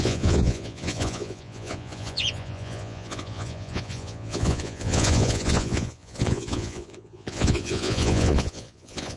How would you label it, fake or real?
fake